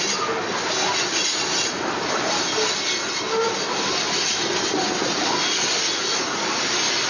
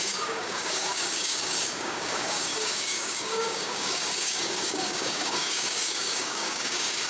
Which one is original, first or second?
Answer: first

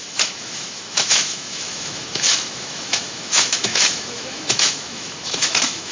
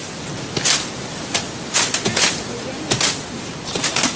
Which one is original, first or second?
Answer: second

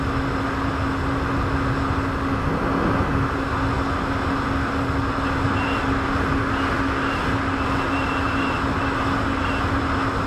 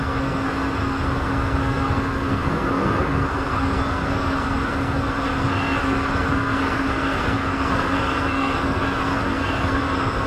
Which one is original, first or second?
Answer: first